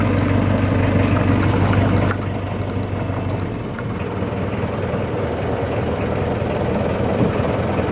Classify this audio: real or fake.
real